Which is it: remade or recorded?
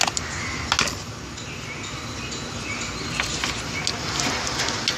recorded